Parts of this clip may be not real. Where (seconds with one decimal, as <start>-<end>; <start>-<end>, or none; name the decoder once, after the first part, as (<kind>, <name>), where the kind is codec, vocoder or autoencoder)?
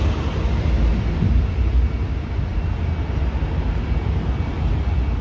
0.9-1.9 (vocoder, BigVGAN v2)